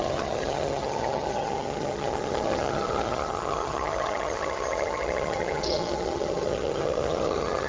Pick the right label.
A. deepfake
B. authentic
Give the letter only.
A